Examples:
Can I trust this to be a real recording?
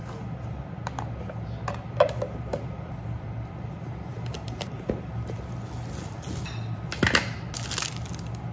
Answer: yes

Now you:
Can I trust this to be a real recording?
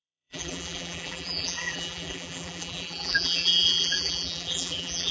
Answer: no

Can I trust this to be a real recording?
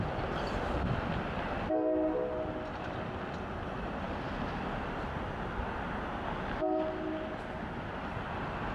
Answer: yes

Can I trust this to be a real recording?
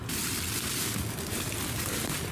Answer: yes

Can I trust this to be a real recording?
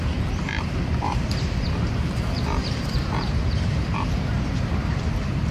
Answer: no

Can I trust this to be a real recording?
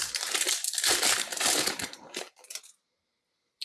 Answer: no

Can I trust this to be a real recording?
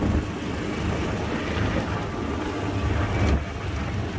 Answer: yes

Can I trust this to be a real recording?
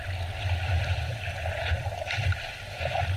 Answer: yes